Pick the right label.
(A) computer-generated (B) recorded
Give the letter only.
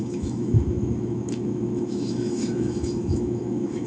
A